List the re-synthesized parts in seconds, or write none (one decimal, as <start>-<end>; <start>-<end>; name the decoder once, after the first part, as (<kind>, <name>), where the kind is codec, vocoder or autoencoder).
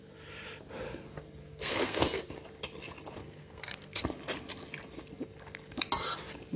1.4-2.2 (codec, SNAC); 3.2-4.0